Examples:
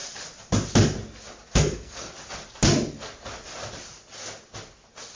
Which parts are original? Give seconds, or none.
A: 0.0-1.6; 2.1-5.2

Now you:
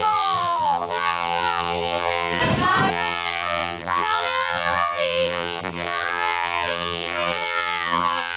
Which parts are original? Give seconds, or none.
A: 2.4-2.9

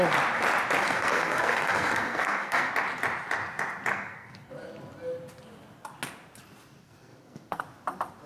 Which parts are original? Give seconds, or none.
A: 0.0-0.8; 2.7-3.9; 4.5-6.8; 7.6-8.3

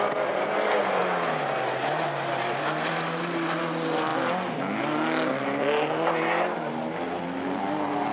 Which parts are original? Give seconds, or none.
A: 0.0-8.1

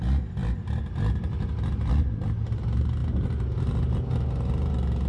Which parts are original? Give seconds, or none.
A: 0.0-5.1

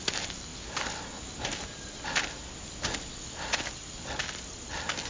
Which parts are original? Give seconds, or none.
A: 0.0-5.1